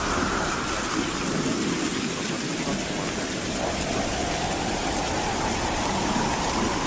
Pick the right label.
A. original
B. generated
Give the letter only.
A